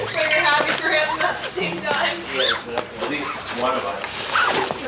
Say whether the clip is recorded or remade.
recorded